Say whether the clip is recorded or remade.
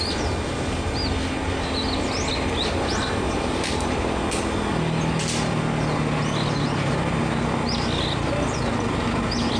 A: recorded